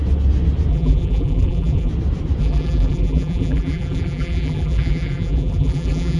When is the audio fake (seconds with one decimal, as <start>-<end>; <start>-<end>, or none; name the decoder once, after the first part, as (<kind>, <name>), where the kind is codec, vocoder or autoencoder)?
0.7-1.9 (vocoder, BigVGAN v2); 2.4-6.2